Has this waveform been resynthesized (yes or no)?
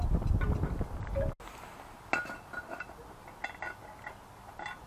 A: no